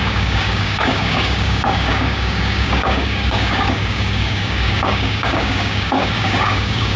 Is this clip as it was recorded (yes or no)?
no